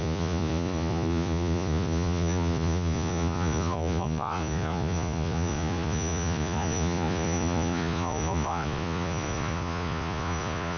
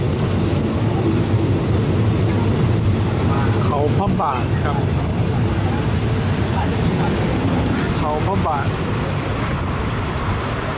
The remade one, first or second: first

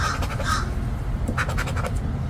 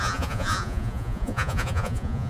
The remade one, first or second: second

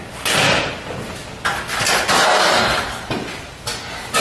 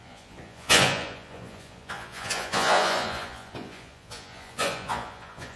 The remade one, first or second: second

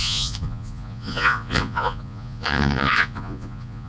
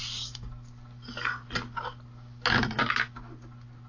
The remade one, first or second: first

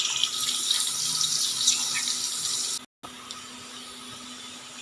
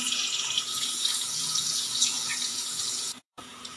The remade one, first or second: second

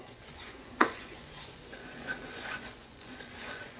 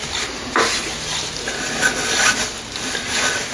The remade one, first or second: first